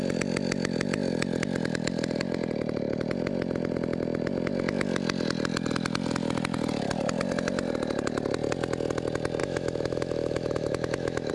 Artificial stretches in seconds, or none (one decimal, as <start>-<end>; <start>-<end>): 9.4-11.3